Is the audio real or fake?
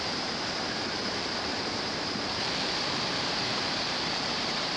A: fake